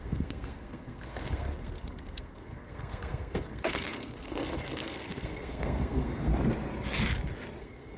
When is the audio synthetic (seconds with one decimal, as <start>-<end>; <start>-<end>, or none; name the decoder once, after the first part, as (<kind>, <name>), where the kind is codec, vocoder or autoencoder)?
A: 0.0-6.3 (codec, SNAC); 7.6-8.0